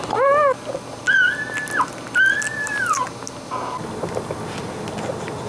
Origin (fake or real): real